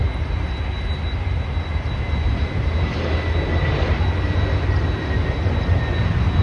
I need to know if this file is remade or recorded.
recorded